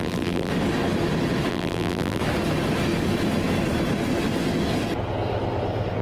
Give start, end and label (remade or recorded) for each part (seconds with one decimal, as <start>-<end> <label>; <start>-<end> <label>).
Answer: 0.0-0.5 remade; 0.5-1.5 recorded; 1.5-2.2 remade; 2.2-6.0 recorded